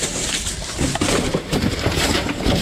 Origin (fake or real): fake